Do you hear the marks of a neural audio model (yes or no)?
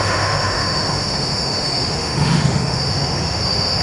yes